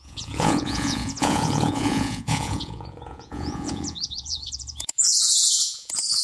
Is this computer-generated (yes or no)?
yes